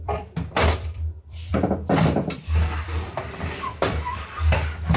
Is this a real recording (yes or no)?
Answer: no